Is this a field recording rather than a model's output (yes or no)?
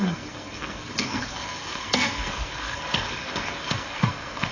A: no